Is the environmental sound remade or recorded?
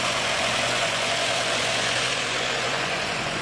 remade